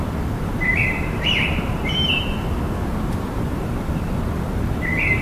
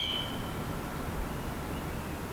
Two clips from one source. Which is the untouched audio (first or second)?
second